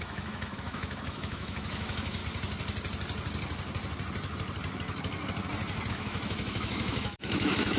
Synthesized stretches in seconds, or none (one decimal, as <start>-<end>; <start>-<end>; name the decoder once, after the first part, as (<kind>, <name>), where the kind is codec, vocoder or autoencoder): 0.0-2.2 (autoencoder, DAC-VAE); 5.9-7.8